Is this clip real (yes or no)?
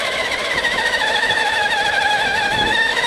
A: no